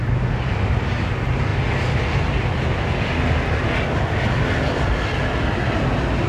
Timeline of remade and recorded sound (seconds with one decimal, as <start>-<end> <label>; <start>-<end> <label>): 0.0-6.3 recorded